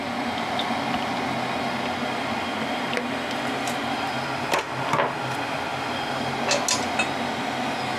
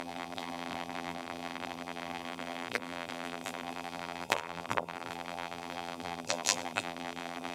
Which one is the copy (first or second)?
second